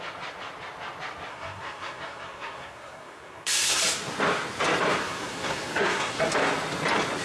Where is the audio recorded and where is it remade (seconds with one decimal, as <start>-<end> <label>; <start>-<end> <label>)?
0.0-1.3 recorded; 1.3-3.8 remade; 3.8-5.0 recorded; 5.0-6.2 remade; 6.2-7.2 recorded